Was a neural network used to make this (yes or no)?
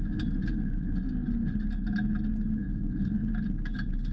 no